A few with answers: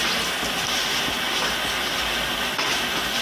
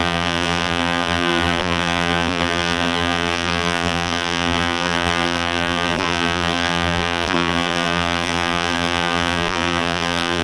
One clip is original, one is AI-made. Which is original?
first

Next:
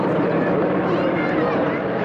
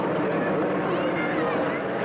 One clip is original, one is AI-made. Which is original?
second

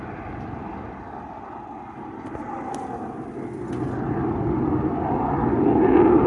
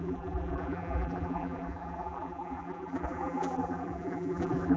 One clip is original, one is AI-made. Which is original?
first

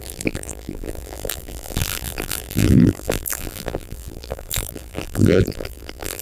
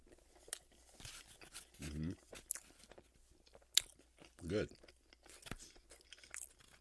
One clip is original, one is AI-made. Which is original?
second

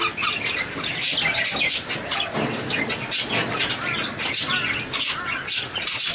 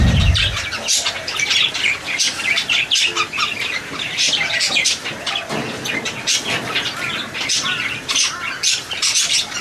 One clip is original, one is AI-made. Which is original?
first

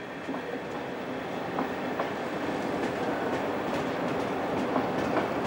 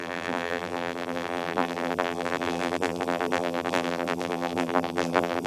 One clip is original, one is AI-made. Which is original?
first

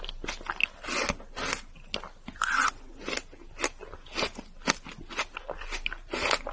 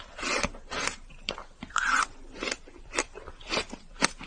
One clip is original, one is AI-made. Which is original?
first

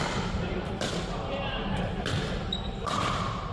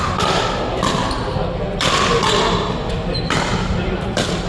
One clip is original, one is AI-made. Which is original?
second